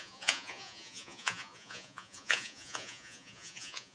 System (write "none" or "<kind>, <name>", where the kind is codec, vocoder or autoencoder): vocoder, Vocos